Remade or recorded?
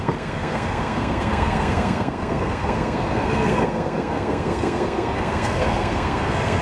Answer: remade